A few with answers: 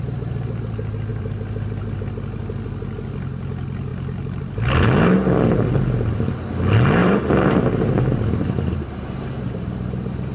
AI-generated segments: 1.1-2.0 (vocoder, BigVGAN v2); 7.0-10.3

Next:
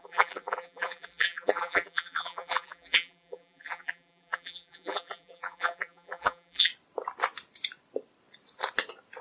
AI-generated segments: 0.0-6.7 (vocoder, BigVGAN v2)

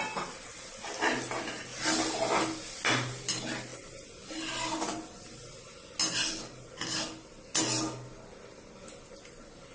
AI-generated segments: none